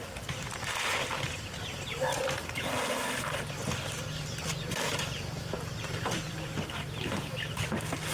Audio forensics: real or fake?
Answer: fake